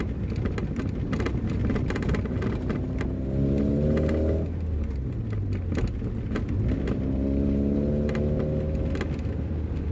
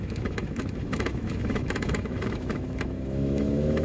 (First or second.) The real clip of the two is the first